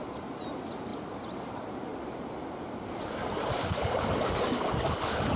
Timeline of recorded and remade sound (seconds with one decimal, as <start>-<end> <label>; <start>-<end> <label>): 0.0-5.4 recorded